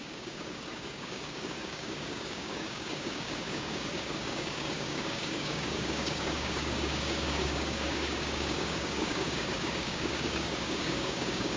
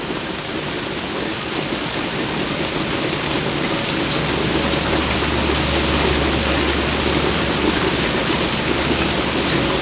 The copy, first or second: first